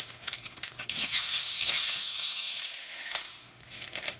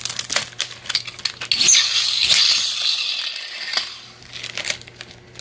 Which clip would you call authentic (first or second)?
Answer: second